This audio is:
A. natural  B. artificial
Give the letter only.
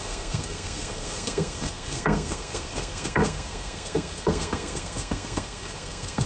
B